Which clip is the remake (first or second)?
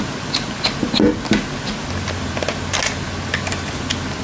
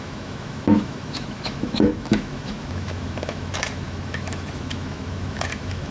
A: second